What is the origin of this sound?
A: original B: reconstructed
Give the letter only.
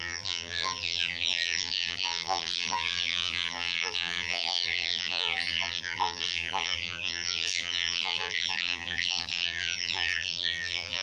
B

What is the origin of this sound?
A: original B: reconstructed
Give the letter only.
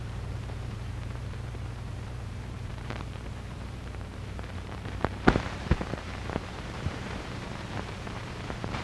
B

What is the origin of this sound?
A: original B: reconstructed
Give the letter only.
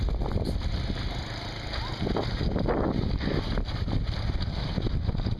A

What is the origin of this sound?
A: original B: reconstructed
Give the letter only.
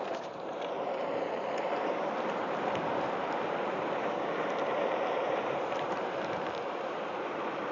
B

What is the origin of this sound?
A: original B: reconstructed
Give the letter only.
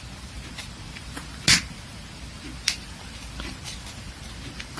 A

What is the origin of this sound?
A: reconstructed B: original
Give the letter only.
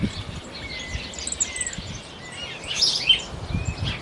B